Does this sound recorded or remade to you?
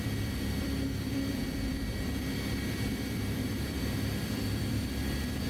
remade